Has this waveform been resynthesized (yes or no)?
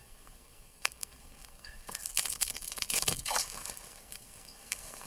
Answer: yes